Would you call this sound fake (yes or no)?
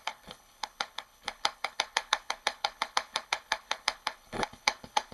yes